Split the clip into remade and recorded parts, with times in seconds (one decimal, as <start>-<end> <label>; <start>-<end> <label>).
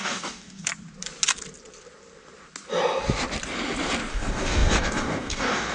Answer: 0.0-0.7 remade; 0.7-4.1 recorded; 4.1-5.7 remade